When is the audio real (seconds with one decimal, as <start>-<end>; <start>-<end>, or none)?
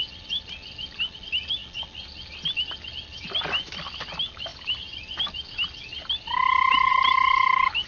0.0-7.9